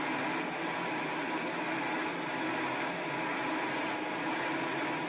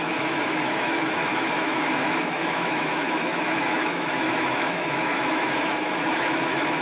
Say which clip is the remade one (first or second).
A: second